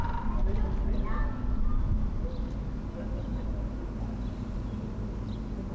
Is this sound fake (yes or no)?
no